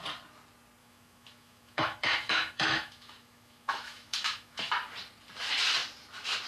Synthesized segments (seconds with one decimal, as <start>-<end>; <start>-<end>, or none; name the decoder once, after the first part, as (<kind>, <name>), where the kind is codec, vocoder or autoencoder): 0.8-4.7 (autoencoder, DAC-VAE)

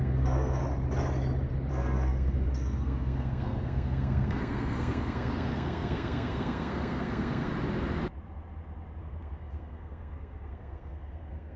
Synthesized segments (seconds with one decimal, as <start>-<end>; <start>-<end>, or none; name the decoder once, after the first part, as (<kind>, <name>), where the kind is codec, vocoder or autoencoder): 0.0-0.6 (codec, SNAC); 1.7-7.5; 9.0-11.6

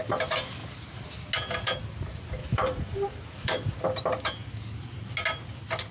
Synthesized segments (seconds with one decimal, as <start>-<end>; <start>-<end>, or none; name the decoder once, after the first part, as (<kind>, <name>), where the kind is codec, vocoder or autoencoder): 0.6-1.1 (vocoder, BigVGAN v2); 2.4-3.8